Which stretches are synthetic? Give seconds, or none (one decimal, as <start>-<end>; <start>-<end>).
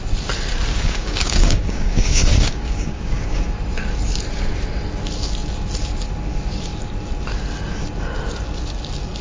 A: 0.7-3.4